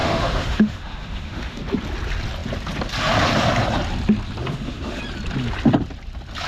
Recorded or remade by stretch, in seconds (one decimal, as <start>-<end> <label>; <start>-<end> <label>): 0.0-1.6 remade; 1.6-4.4 recorded; 4.4-5.0 remade; 5.0-6.5 recorded